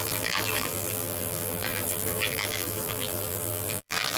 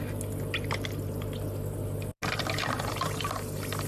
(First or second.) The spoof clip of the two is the first